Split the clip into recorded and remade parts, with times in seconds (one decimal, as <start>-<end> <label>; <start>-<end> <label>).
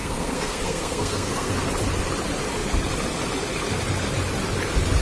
0.0-1.7 remade; 1.7-5.0 recorded